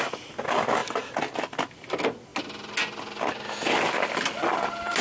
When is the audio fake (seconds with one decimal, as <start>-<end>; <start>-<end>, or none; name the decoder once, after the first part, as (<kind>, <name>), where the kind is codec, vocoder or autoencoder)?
none